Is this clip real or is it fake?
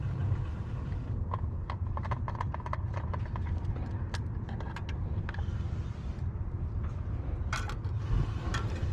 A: fake